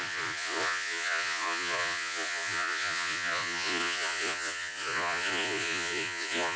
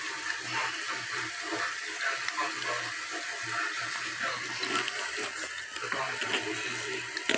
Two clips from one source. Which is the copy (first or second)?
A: first